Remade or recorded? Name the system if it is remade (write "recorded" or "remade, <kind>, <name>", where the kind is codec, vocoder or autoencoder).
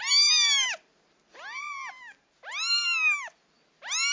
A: recorded